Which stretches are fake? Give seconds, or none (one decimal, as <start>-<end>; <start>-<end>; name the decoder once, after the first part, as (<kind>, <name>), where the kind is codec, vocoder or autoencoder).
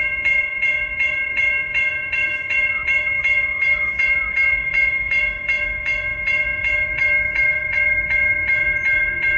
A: 0.0-9.4 (vocoder, Vocos)